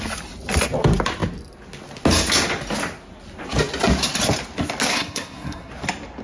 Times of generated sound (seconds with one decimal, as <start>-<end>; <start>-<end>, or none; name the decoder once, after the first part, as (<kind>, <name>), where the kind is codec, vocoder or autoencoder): 4.9-5.7 (codec, SNAC)